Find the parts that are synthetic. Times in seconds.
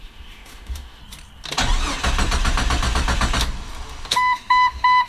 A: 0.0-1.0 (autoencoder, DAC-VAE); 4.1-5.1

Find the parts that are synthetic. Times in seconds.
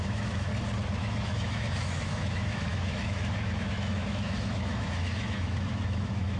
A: 0.0-0.5 (autoencoder, DAC-VAE); 1.0-6.4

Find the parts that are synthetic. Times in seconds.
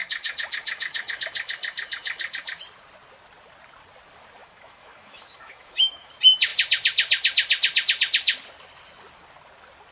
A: 0.0-1.2 (autoencoder, DAC-VAE); 4.4-6.1